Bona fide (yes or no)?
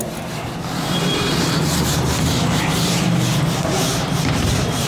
no